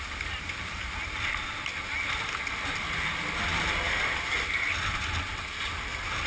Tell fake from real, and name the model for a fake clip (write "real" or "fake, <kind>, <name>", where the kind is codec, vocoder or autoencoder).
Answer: real